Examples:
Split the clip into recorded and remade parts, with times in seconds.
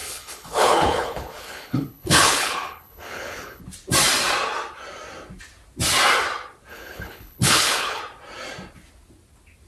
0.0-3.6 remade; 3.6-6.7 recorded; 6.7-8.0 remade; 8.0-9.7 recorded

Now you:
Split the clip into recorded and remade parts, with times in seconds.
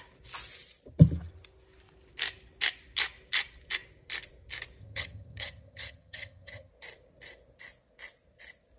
0.0-4.8 recorded; 4.8-6.7 remade; 6.7-8.8 recorded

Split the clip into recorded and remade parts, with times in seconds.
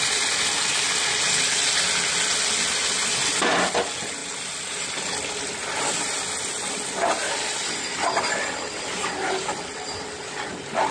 0.0-10.9 recorded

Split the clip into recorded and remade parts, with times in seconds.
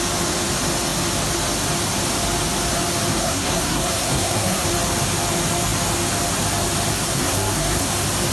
0.0-3.1 recorded; 3.1-4.7 remade; 4.7-6.9 recorded; 6.9-7.9 remade; 7.9-8.3 recorded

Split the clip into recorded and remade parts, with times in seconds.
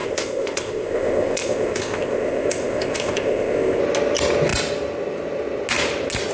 0.0-3.8 remade; 3.8-6.3 recorded